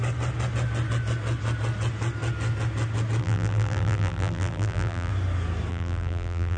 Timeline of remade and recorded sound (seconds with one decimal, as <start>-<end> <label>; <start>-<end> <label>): 0.0-3.2 recorded; 3.2-5.1 remade; 5.1-5.7 recorded; 5.7-6.6 remade